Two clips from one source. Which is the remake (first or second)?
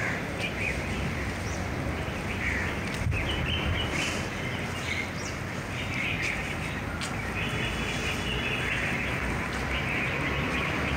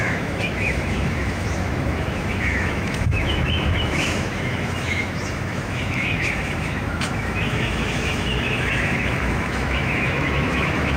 second